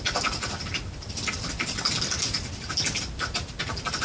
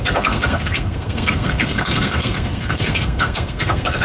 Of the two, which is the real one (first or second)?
first